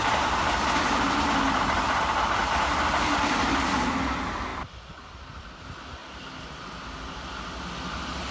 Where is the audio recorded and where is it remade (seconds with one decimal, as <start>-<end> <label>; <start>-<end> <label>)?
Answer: 0.0-2.4 recorded; 2.4-3.1 remade; 3.1-4.5 recorded; 4.5-5.6 remade; 5.6-6.0 recorded; 6.0-7.1 remade; 7.1-8.3 recorded